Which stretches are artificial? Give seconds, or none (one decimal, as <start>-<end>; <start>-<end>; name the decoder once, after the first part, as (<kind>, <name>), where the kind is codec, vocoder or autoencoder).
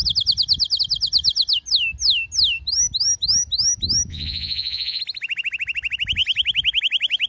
4.1-5.0 (vocoder, Vocos)